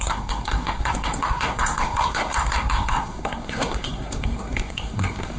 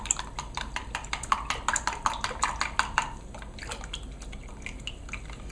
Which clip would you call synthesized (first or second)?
first